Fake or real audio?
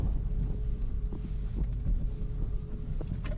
real